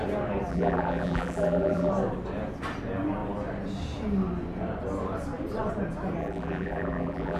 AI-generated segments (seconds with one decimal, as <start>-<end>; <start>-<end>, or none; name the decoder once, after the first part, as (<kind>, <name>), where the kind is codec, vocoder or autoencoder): 0.5-1.9 (vocoder, BigVGAN v2); 6.2-7.4